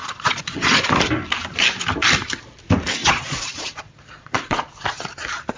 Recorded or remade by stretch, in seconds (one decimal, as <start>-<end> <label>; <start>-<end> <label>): 0.0-0.8 remade; 0.8-3.0 recorded; 3.0-4.7 remade; 4.7-5.6 recorded